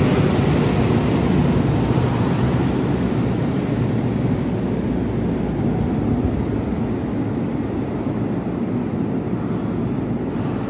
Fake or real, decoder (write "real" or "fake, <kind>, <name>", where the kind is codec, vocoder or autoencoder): real